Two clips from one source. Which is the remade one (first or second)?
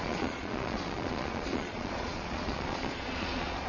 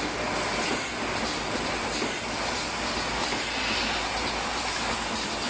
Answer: first